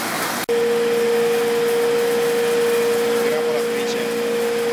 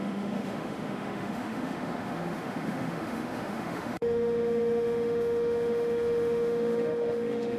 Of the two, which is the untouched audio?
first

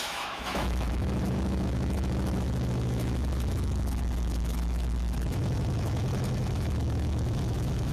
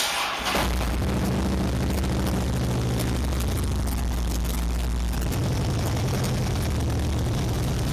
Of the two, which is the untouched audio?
second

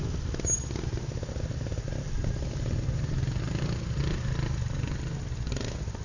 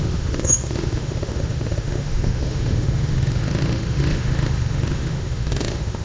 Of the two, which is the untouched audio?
first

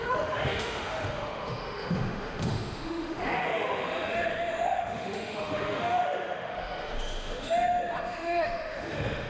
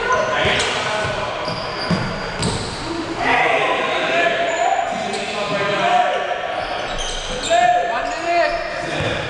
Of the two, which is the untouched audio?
second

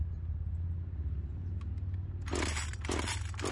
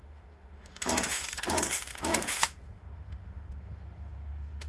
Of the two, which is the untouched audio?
first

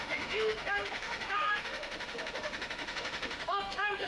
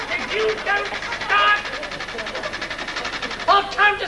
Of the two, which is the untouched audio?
second